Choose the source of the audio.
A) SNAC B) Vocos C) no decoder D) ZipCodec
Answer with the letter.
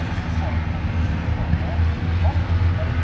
C